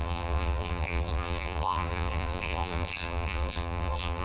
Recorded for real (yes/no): no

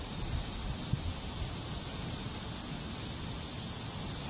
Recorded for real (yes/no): yes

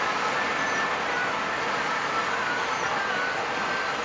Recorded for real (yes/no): yes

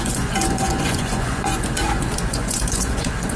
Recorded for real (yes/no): no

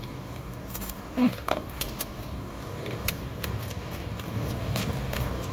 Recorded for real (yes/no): no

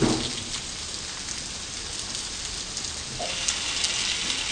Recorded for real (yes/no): yes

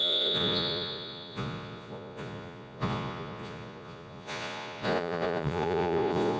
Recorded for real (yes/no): no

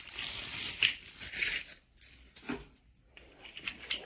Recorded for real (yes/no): yes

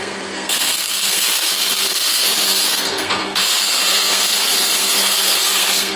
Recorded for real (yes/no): no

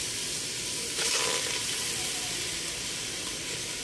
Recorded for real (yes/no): yes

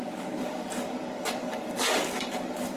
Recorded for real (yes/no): no